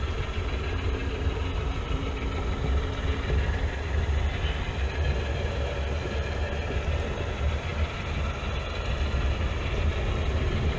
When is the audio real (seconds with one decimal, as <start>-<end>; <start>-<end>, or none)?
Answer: 0.0-10.8